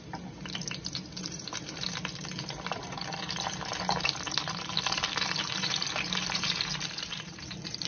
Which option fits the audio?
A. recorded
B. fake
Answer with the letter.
B